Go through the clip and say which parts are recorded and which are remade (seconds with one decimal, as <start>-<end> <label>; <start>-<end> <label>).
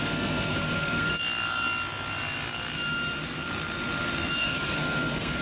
0.0-1.1 remade; 1.1-4.3 recorded; 4.3-5.4 remade